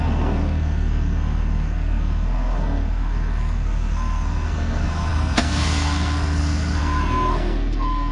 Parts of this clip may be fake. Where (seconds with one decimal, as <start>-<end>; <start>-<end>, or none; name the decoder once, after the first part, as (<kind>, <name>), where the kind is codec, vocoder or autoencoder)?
0.0-8.1 (codec, SNAC)